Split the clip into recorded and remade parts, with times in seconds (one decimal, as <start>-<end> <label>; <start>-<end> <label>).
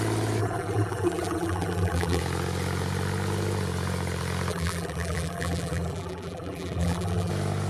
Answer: 0.0-0.4 recorded; 0.4-2.2 remade; 2.2-4.5 recorded; 4.5-7.3 remade; 7.3-7.7 recorded